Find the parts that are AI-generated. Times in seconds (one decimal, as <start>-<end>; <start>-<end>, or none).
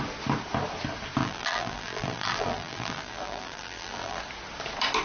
1.2-4.2